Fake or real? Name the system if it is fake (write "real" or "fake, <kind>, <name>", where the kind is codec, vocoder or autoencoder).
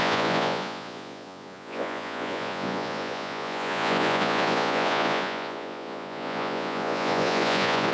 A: fake, vocoder, Vocos